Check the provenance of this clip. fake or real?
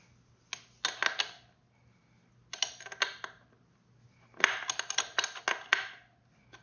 real